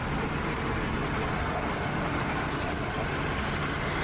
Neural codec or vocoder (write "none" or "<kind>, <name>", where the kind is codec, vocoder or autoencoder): none